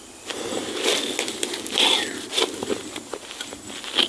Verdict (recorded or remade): recorded